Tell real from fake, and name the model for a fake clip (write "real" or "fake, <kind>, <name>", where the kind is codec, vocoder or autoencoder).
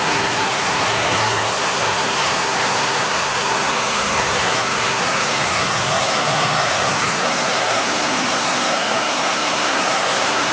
fake, codec, SNAC